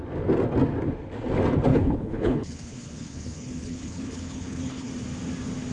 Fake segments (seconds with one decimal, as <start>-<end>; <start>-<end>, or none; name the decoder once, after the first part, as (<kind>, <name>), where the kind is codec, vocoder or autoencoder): 1.7-4.9 (codec, HILCodec)